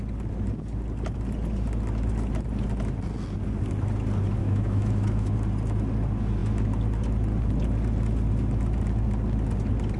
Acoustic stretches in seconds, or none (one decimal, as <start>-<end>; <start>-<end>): 0.0-4.4; 5.3-10.0